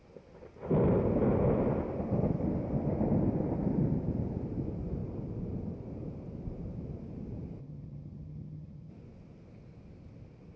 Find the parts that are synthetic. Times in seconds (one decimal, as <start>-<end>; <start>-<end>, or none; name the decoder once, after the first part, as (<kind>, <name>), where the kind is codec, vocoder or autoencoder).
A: 7.6-8.9 (vocoder, HiFi-GAN)